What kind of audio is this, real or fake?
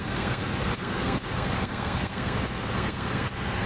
fake